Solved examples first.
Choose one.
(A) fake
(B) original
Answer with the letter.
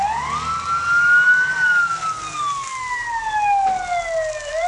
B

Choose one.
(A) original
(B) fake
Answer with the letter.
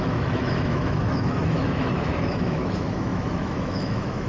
B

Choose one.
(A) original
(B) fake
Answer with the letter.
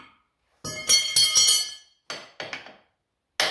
A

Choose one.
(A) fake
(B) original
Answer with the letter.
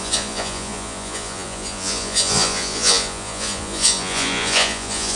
A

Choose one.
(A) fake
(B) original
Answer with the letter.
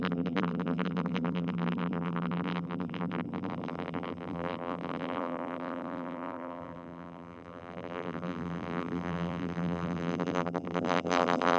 A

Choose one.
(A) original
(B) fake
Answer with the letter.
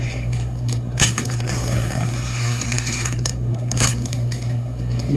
B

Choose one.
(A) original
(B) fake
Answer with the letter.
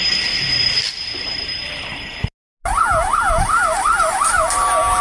A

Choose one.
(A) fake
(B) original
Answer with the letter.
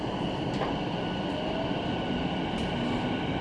B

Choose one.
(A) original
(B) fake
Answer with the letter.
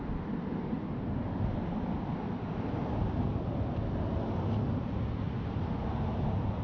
A